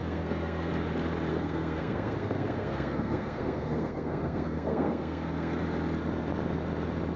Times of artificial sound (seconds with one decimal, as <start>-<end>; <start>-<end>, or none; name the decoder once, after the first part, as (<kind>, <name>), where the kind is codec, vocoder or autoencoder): 0.0-0.7 (codec, SNAC); 1.3-5.6